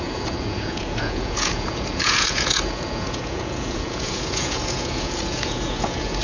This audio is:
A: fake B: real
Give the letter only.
A